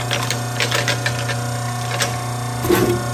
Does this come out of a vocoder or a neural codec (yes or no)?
no